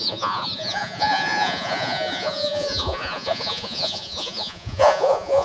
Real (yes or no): no